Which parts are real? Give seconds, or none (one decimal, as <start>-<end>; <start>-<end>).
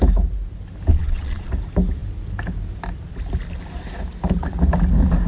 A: 0.0-0.9; 1.5-5.3